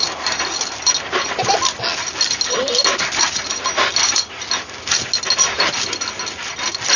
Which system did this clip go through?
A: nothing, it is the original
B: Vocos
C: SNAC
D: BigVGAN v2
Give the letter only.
A